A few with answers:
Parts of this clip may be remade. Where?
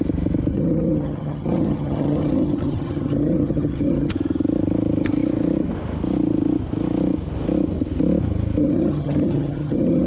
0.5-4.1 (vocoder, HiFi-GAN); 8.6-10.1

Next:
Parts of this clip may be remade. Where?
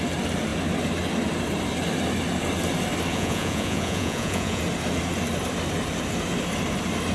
3.1-4.6 (vocoder, Vocos)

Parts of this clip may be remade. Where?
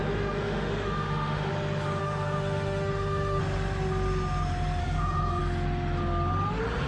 0.0-1.5 (autoencoder, DAC-VAE); 2.0-3.4; 4.8-5.4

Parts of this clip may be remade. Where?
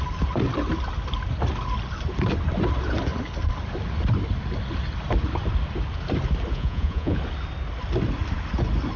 6.5-7.2 (vocoder, Vocos)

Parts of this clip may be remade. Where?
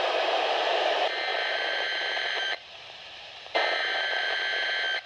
1.3-4.4 (vocoder, BigVGAN v2)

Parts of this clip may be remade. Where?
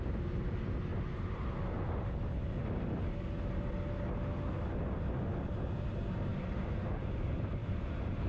0.0-0.9 (vocoder, BigVGAN v2); 5.4-8.3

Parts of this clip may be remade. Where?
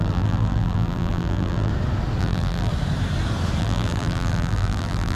0.0-1.7 (vocoder, BigVGAN v2); 2.2-2.7; 3.6-5.2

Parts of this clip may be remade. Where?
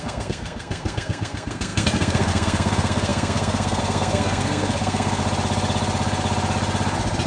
0.0-5.2 (codec, SNAC)